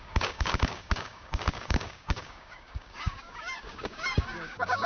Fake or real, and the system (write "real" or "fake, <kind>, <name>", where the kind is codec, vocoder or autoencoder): fake, codec, DAC